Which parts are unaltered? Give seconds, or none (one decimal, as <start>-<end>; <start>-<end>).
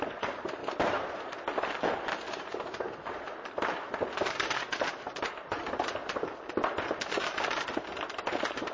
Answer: 6.0-6.8